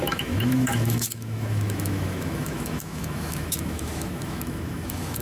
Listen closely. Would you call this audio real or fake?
fake